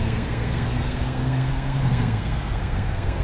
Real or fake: fake